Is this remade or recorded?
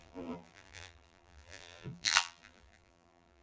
remade